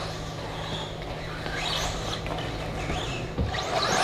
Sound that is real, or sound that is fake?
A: real